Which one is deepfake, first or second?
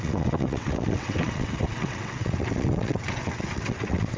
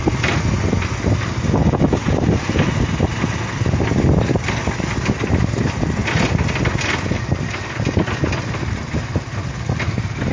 first